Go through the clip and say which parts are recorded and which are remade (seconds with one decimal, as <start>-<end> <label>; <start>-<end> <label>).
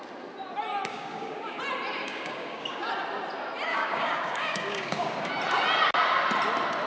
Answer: 0.0-0.9 recorded; 0.9-1.6 remade; 1.6-2.0 recorded; 2.0-2.9 remade; 2.9-3.7 recorded; 3.7-5.3 remade; 5.3-6.9 recorded